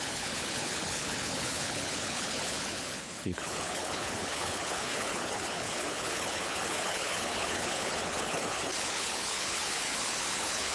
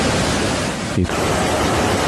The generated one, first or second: first